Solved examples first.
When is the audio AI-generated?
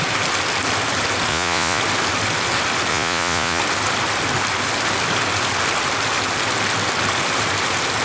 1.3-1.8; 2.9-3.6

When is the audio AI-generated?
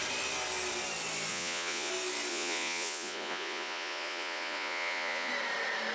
1.3-1.9; 2.3-5.3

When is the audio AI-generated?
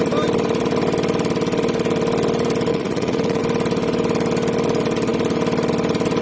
2.7-3.4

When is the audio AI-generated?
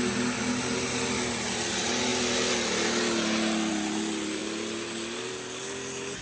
none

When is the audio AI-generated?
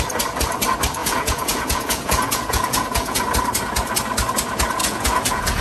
1.0-3.2; 4.8-5.6